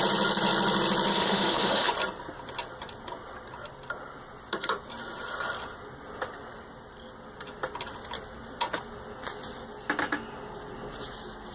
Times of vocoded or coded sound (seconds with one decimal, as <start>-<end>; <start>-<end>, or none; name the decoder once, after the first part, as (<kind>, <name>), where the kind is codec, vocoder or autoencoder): 1.1-1.9 (autoencoder, DAC-VAE)